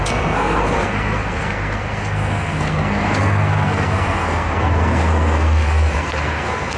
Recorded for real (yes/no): no